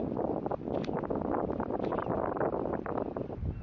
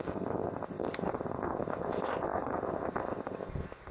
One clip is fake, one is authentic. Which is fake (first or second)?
second